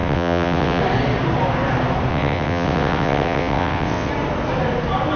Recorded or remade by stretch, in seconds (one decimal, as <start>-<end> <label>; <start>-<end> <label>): 0.0-0.8 remade; 0.8-2.1 recorded; 2.1-4.1 remade; 4.1-5.2 recorded